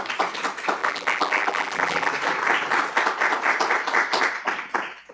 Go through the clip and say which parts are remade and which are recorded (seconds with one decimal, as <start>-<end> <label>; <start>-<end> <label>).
0.0-0.8 recorded; 0.8-2.1 remade; 2.1-5.1 recorded